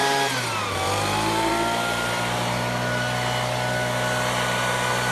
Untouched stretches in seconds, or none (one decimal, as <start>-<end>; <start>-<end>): 1.5-5.1